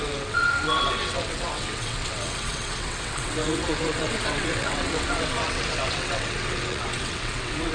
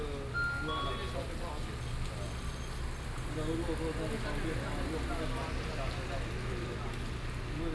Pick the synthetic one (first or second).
first